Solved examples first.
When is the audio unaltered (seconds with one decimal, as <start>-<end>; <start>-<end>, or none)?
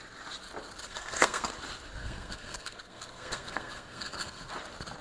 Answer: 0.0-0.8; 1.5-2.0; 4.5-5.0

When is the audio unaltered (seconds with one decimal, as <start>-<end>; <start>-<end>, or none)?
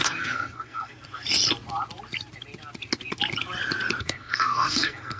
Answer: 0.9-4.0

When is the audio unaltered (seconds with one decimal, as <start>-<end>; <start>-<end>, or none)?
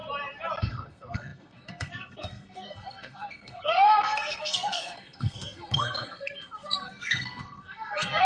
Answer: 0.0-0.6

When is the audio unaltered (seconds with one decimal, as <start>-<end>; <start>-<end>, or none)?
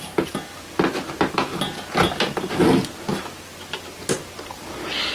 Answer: 0.0-5.1